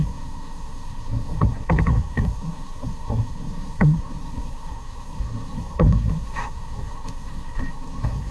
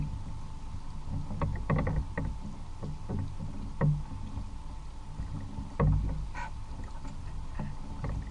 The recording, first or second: second